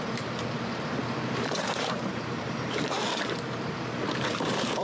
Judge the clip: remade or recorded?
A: remade